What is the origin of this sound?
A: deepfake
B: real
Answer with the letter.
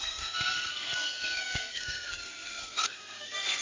A